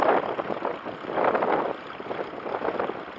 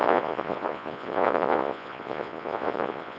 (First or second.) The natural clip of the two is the first